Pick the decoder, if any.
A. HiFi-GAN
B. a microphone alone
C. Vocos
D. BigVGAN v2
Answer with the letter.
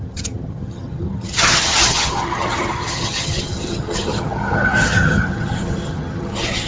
A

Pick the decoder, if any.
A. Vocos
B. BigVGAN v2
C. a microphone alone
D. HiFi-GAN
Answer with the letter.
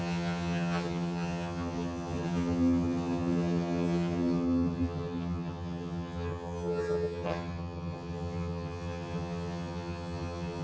D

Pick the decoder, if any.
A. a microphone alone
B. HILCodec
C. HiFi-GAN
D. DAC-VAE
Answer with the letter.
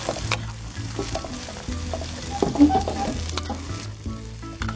A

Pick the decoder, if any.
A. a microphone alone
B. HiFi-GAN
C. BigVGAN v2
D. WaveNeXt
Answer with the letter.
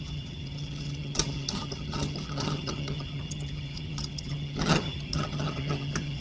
B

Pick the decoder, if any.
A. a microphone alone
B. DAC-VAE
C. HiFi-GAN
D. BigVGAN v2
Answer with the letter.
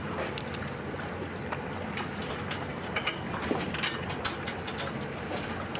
A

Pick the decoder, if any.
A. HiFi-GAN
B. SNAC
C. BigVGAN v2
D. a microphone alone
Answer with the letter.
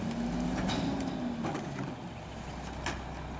D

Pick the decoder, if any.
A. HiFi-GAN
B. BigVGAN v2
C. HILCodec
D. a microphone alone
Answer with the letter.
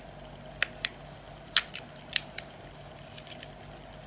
D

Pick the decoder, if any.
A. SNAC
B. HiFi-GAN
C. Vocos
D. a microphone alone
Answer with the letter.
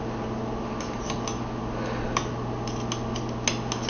D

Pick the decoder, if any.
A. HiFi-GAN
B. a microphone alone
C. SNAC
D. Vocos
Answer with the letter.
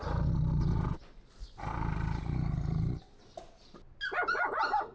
B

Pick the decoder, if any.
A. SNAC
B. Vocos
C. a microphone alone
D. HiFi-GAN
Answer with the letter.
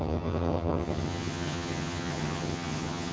D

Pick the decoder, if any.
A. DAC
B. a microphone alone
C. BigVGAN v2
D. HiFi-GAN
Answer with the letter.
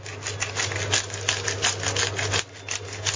B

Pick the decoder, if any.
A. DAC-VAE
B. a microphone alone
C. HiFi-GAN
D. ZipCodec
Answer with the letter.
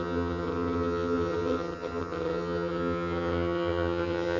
C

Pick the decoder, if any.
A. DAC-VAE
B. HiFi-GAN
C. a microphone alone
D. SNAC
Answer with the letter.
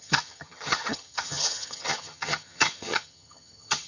B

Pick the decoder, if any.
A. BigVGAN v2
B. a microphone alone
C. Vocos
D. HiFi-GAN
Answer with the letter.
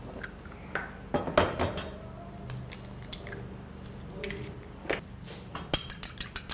B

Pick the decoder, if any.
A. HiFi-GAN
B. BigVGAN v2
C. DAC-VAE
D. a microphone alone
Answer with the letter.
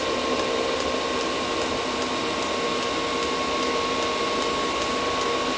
D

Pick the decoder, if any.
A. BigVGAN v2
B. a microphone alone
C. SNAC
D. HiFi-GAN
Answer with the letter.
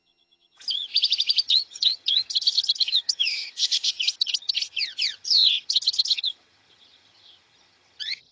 D